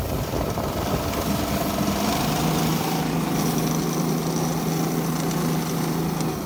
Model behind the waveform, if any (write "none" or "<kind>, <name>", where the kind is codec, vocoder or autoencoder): none